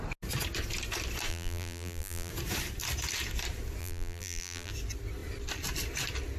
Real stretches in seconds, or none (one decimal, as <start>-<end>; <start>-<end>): 0.0-1.3; 2.3-3.8; 4.7-6.4

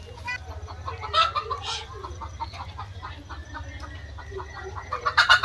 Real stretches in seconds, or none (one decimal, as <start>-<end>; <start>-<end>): 0.0-5.4

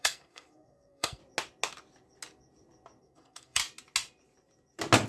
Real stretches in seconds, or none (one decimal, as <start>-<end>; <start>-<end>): 1.2-3.0; 3.6-5.1